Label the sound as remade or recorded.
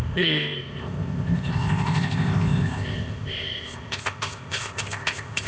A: remade